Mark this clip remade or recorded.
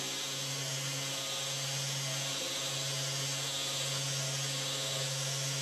recorded